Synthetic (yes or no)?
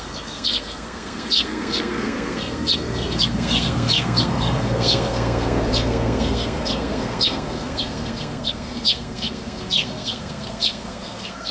yes